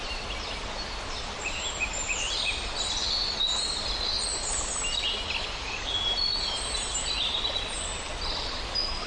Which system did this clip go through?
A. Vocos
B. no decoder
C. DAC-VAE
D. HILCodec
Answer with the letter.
B